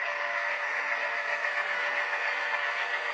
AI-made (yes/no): yes